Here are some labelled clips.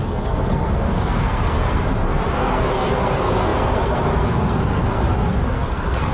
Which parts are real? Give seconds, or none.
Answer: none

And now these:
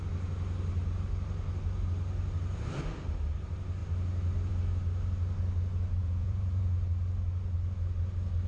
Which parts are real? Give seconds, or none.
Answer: 0.0-6.0; 6.7-8.5

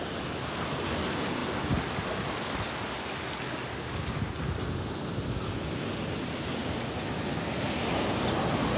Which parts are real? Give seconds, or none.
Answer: 0.0-8.8

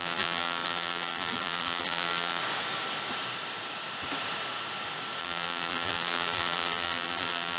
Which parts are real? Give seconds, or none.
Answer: 2.4-5.2

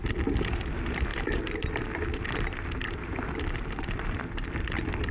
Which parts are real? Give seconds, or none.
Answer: 0.0-1.1; 4.2-5.1

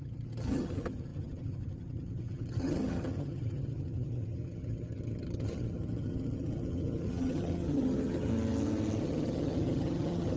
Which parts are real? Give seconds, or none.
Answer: 8.3-9.0

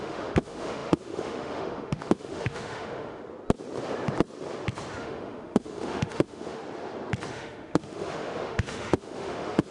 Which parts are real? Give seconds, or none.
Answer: 3.2-5.0; 6.6-7.3

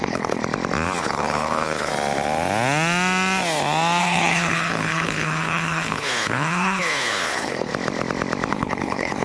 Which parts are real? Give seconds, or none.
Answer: 0.4-1.0; 1.9-4.0; 7.7-8.5